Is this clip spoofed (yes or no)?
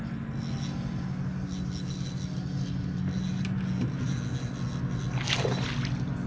no